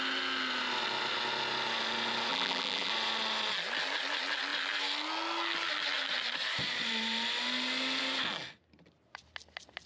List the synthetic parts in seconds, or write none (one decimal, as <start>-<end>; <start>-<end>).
2.3-2.9